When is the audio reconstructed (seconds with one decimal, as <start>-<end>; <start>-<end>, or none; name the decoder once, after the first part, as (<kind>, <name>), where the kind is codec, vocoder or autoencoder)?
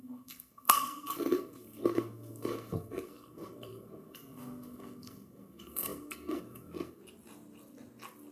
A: 0.0-7.0 (codec, SNAC)